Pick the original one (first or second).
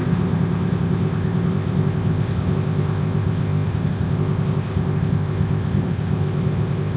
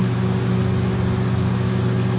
second